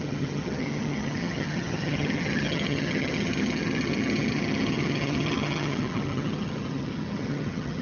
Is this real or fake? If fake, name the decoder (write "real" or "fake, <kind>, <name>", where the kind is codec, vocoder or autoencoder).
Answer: fake, vocoder, HiFi-GAN